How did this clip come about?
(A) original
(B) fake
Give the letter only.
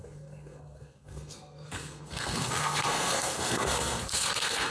B